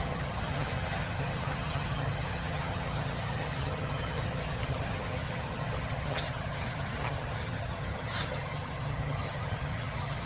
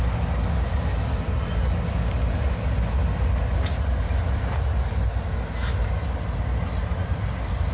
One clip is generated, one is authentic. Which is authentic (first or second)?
second